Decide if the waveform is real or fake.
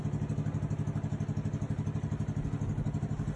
real